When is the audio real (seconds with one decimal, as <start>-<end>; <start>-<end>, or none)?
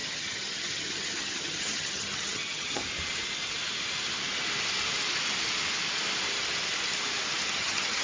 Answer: 2.8-7.5